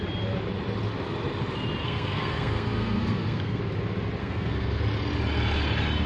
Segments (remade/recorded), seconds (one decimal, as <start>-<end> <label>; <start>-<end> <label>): 0.0-1.8 recorded; 1.8-3.6 remade; 3.6-4.2 recorded; 4.2-4.8 remade; 4.8-6.1 recorded